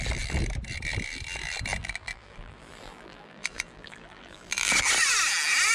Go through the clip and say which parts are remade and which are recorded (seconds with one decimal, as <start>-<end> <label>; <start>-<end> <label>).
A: 0.0-1.8 recorded; 1.8-4.7 remade; 4.7-5.7 recorded